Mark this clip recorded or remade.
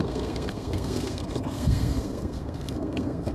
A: remade